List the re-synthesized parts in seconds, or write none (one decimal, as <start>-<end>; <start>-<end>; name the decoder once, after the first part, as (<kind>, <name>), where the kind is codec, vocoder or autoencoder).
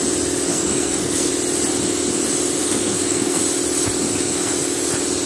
0.5-1.3 (codec, SNAC); 2.6-3.4; 4.1-4.6